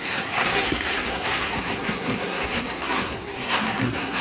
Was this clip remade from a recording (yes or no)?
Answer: yes